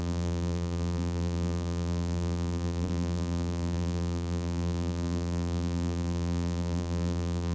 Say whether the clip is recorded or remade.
remade